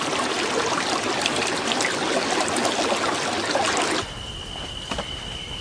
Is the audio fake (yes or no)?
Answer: no